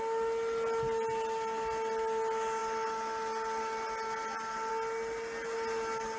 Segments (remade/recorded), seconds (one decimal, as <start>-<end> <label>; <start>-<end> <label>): 0.0-6.2 recorded